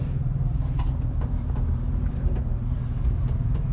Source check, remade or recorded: remade